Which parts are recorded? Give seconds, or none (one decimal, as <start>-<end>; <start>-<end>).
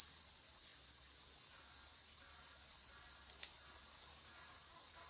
0.0-5.1